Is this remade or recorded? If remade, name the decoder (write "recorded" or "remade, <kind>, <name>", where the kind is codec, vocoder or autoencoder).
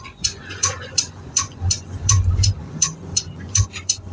remade, vocoder, Vocos